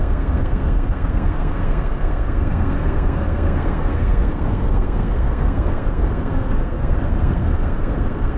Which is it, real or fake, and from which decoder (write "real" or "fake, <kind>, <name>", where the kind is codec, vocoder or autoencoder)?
fake, codec, SNAC